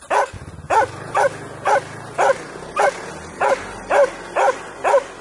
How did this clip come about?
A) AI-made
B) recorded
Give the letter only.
B